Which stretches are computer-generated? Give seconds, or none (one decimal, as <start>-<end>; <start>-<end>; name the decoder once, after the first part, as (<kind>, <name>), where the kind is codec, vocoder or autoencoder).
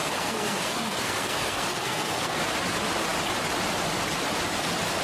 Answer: 0.0-2.4 (codec, SNAC)